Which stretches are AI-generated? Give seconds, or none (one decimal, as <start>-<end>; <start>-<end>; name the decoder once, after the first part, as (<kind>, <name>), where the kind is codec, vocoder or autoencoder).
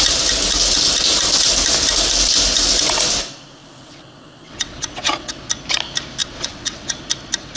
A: 3.6-5.3 (vocoder, WaveNeXt); 6.2-7.0